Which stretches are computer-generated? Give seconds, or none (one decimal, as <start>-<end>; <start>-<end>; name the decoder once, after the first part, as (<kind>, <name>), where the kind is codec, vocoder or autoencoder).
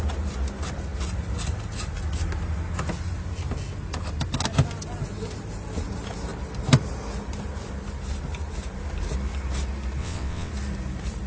10.0-10.5 (vocoder, WaveNeXt)